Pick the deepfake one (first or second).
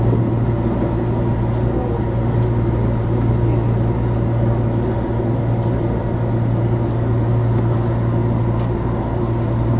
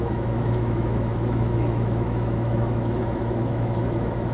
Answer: second